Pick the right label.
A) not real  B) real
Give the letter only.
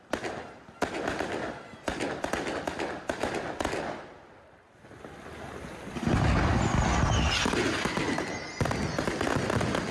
B